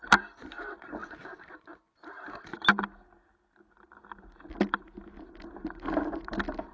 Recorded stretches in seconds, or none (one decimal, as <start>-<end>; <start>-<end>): 0.0-6.7